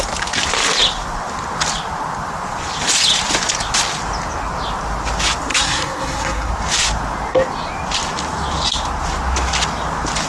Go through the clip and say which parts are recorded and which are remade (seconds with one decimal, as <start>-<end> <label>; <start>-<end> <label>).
0.0-5.5 recorded; 5.5-6.5 remade; 6.5-10.3 recorded